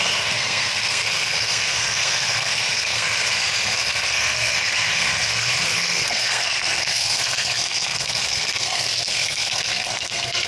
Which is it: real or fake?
fake